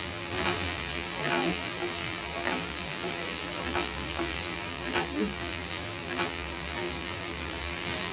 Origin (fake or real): fake